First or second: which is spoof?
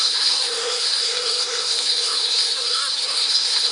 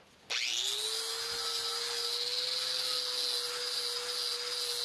first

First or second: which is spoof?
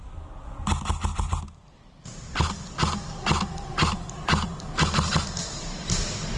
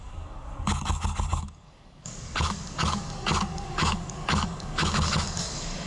second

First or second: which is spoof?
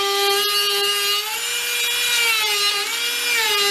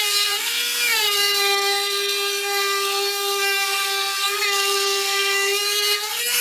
second